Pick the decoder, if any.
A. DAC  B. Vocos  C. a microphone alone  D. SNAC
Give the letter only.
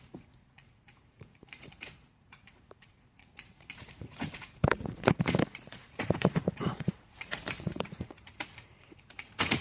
B